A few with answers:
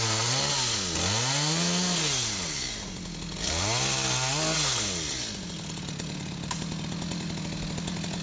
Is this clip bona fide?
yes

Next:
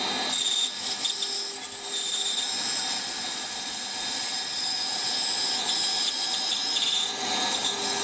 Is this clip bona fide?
yes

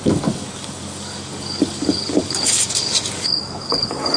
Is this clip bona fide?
no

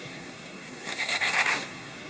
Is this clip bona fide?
no